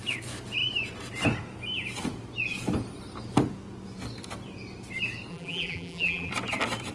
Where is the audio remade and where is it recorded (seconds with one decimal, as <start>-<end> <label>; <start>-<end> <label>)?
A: 0.0-5.3 recorded; 5.3-6.3 remade; 6.3-6.9 recorded

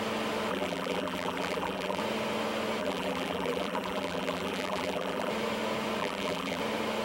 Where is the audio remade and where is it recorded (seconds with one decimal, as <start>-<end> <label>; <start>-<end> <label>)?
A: 0.0-0.5 recorded; 0.5-2.0 remade; 2.0-2.8 recorded; 2.8-5.3 remade; 5.3-6.0 recorded; 6.0-6.6 remade; 6.6-7.0 recorded

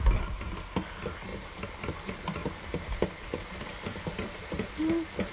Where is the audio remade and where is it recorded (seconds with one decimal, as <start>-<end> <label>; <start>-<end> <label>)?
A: 0.0-1.3 recorded; 1.3-1.8 remade; 1.8-2.4 recorded; 2.4-4.7 remade; 4.7-5.3 recorded

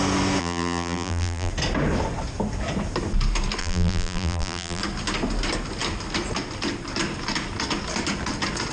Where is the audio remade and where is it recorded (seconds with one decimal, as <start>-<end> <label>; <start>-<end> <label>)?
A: 0.0-0.4 recorded; 0.4-1.5 remade; 1.5-3.6 recorded; 3.6-4.8 remade; 4.8-8.7 recorded

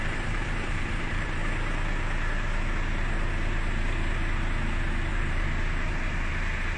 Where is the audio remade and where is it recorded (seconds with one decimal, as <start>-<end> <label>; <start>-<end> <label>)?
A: 0.0-1.4 remade; 1.4-5.1 recorded; 5.1-6.8 remade

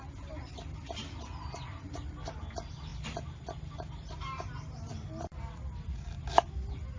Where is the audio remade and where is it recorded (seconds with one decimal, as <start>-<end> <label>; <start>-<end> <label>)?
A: 0.0-7.0 recorded